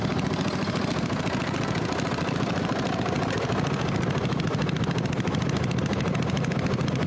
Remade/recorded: recorded